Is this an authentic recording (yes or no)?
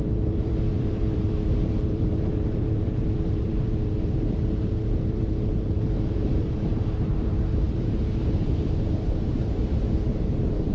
no